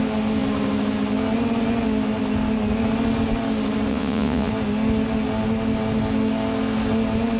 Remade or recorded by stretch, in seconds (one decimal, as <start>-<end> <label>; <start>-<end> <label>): 0.0-3.9 recorded; 3.9-4.5 remade; 4.5-7.4 recorded